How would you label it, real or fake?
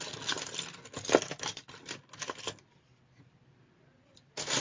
real